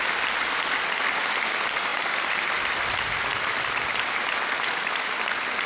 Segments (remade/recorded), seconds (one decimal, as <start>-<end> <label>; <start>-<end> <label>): 0.0-1.9 recorded; 1.9-3.8 remade; 3.8-5.7 recorded